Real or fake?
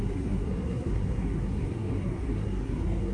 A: fake